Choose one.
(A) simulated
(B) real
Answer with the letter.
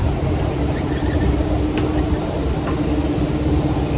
B